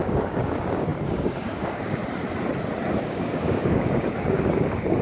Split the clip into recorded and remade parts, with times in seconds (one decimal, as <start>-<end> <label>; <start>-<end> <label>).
0.0-2.0 remade; 2.0-3.0 recorded; 3.0-5.0 remade